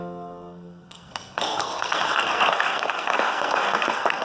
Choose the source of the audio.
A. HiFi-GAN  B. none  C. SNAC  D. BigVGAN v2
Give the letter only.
C